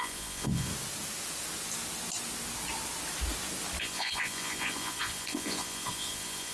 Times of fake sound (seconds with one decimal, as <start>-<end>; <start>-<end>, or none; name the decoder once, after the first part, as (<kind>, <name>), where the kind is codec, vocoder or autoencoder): 0.0-0.7 (vocoder, Vocos); 3.8-6.5